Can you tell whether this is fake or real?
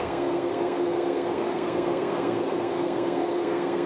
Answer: fake